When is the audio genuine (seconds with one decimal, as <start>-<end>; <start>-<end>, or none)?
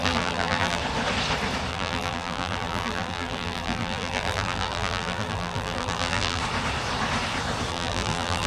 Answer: 0.8-1.7; 6.4-7.7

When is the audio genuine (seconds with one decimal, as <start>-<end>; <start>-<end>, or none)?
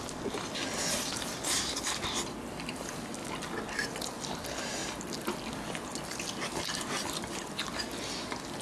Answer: 3.2-4.3; 5.9-6.8